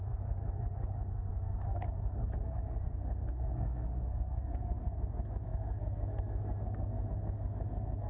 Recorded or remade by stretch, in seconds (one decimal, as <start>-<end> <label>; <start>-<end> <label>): 0.0-8.1 remade